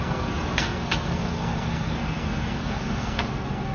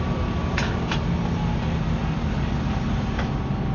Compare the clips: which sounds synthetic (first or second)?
first